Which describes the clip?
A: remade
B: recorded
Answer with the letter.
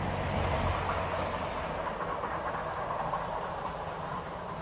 B